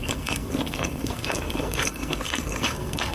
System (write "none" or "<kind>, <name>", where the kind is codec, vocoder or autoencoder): codec, SNAC